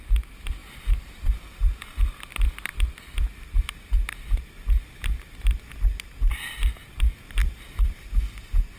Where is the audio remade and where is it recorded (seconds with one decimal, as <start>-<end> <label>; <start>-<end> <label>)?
0.0-0.6 recorded; 0.6-1.8 remade; 1.8-7.4 recorded; 7.4-8.1 remade; 8.1-8.8 recorded